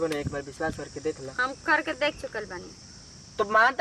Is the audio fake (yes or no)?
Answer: no